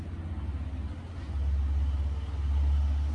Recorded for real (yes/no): yes